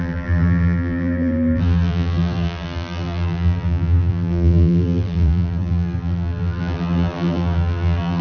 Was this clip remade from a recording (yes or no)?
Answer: yes